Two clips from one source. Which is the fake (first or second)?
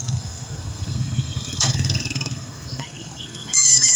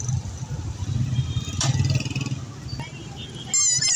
first